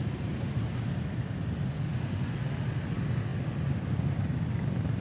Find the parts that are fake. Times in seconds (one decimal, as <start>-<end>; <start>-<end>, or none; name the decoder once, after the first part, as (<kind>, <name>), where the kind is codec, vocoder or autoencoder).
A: none